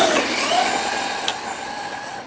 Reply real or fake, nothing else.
real